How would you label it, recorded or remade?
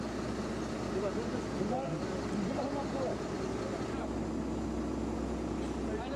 recorded